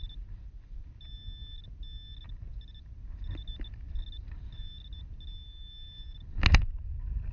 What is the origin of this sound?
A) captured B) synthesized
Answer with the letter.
A